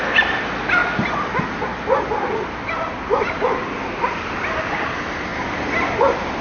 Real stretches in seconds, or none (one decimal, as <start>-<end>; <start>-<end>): 0.0-6.4